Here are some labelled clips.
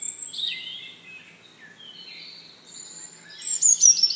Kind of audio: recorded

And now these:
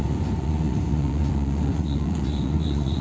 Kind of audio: remade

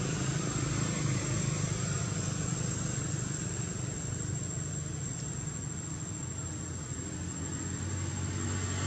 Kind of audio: recorded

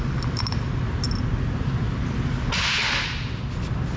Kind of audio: recorded